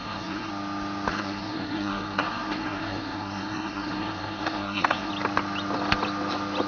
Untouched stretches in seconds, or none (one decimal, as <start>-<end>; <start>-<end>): 0.5-1.1; 5.1-6.7